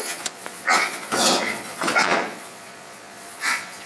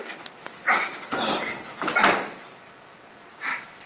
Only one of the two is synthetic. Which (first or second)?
first